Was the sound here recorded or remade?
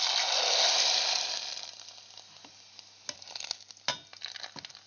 recorded